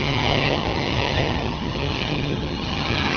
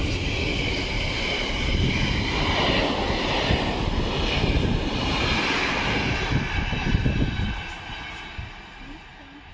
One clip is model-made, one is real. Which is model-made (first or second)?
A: first